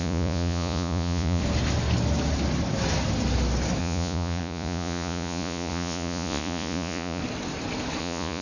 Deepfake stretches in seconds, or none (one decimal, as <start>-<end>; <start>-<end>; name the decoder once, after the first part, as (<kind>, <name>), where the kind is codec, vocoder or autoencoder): 0.0-1.4 (vocoder, Vocos); 3.8-7.2; 8.0-8.4